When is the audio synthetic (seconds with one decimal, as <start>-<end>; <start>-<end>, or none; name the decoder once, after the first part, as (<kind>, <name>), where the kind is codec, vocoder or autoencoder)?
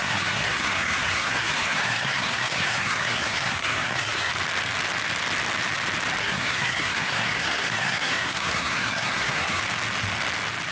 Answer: 0.0-4.3 (codec, SNAC); 6.2-9.6